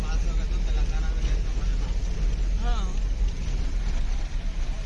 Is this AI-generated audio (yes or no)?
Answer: no